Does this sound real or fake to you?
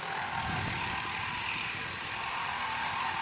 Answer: fake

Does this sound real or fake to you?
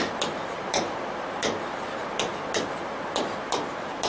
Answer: fake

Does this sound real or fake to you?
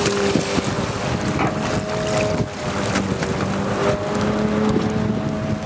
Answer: real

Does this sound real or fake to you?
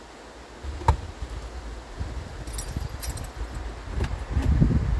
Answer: real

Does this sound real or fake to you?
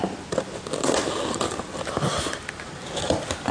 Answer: real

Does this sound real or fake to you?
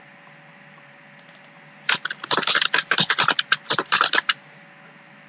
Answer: real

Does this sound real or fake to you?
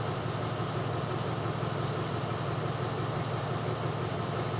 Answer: real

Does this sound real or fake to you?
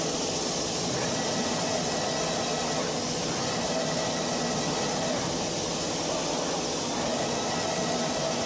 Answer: real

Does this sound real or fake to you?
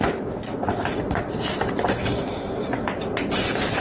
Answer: fake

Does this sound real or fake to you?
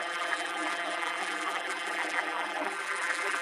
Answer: fake